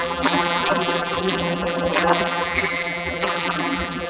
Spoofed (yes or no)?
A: yes